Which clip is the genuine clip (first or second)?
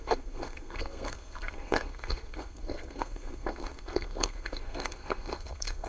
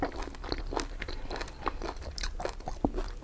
second